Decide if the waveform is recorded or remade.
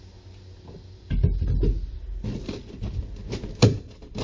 recorded